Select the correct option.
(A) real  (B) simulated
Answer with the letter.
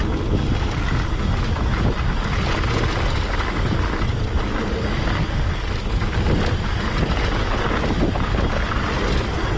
A